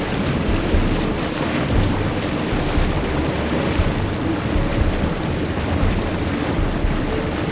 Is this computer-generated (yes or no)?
yes